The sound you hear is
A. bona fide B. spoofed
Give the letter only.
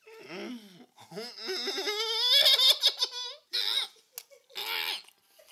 A